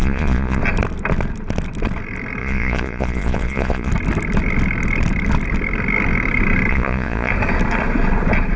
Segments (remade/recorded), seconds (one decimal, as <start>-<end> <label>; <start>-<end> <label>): 0.0-0.6 remade; 0.6-2.4 recorded; 2.4-3.9 remade; 3.9-6.7 recorded; 6.7-7.3 remade; 7.3-8.6 recorded